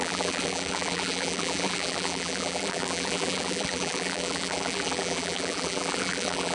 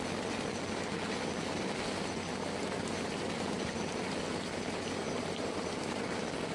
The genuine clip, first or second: second